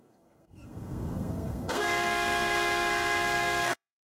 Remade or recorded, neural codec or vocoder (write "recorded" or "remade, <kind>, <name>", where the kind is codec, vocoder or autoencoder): remade, codec, SNAC